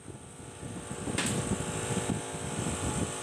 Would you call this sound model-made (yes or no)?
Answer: no